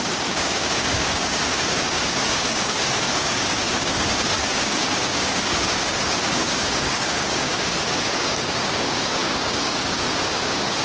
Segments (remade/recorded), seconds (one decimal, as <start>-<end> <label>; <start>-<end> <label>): 0.0-10.8 remade